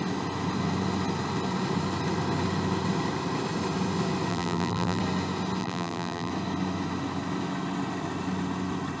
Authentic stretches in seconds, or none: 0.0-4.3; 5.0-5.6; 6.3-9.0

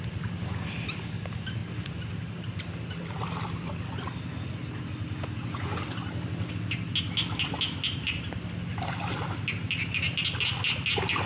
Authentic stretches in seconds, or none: 0.0-11.3

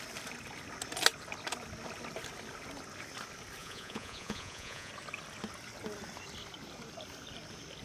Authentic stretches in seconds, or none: 0.0-3.6; 4.9-7.8